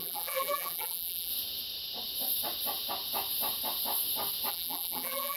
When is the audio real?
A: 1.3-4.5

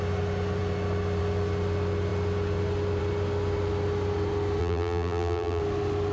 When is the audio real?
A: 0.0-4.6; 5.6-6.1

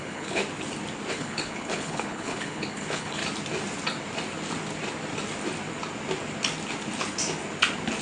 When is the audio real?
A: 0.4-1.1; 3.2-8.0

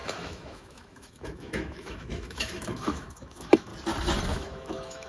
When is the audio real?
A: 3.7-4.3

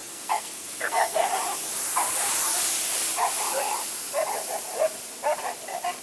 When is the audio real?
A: 1.3-6.0

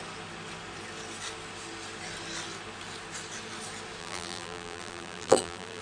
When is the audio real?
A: 0.0-4.0

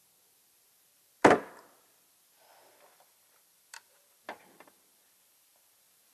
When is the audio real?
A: 0.0-2.7

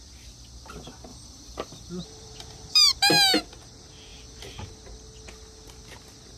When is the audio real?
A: 0.0-1.1; 3.1-4.1; 4.7-6.4